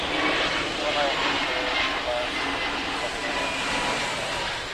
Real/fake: real